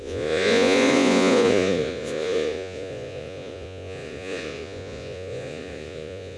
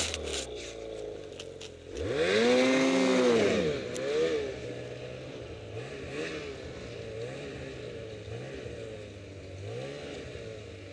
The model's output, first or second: first